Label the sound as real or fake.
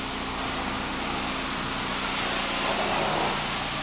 real